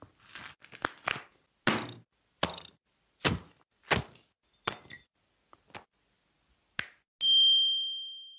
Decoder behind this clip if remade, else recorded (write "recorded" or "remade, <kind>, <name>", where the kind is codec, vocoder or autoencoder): recorded